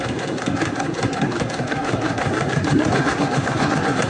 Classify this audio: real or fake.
fake